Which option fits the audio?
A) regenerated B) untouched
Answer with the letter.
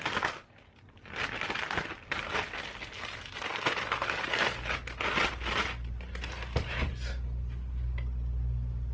B